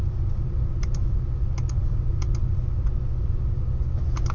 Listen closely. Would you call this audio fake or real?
real